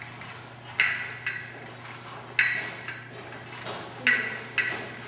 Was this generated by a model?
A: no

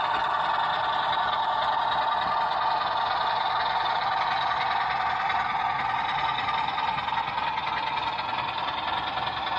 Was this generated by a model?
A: no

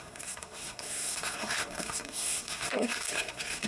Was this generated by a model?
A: yes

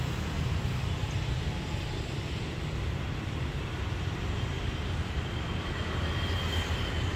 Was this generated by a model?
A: no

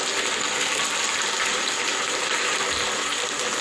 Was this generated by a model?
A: no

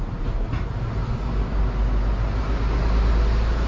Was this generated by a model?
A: no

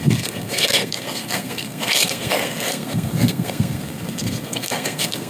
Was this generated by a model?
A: yes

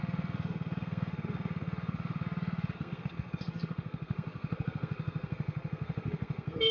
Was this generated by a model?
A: yes